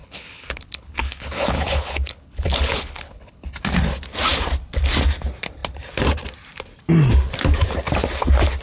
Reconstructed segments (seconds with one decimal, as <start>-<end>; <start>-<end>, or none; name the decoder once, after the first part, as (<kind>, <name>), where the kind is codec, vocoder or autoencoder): 0.0-3.5 (codec, HILCodec)